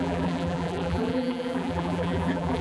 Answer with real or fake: fake